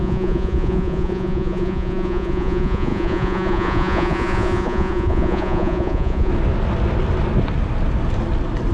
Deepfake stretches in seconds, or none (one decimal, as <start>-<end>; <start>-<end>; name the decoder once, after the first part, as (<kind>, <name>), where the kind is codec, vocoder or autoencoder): 0.0-6.3 (vocoder, Vocos)